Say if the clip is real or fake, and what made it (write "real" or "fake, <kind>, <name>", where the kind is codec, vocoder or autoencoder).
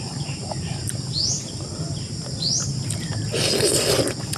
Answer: real